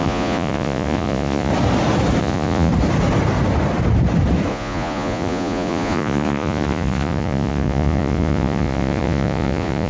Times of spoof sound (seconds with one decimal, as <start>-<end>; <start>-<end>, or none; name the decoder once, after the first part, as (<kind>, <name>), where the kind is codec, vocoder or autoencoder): 0.0-1.5 (vocoder, Vocos); 2.2-2.7; 4.5-9.9